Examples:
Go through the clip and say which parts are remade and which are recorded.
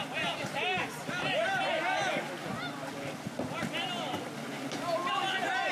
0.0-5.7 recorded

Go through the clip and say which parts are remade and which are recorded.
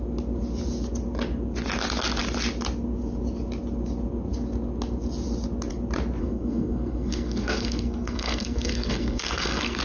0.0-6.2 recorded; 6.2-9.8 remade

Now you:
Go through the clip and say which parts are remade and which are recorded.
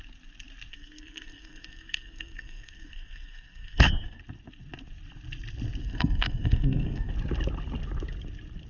0.0-0.7 recorded; 0.7-4.2 remade; 4.2-5.8 recorded; 5.8-7.1 remade; 7.1-8.7 recorded